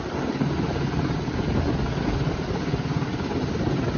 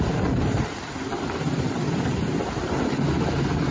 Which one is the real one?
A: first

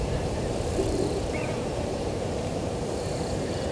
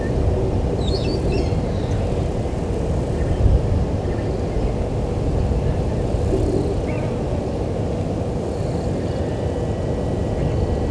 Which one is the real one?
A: second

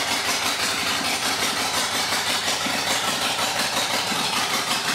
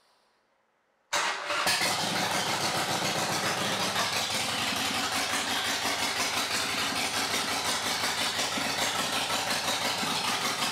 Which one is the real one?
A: second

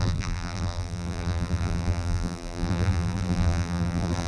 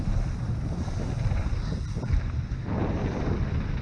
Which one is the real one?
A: second